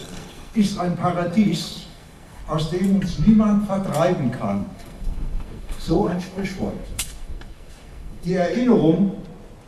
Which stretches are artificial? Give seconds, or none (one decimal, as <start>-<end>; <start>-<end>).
0.0-0.8; 1.3-2.4; 4.5-8.3